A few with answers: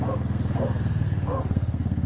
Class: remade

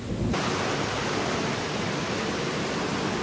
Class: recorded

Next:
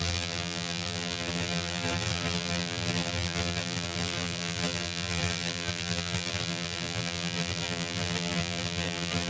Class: remade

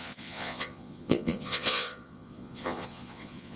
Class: remade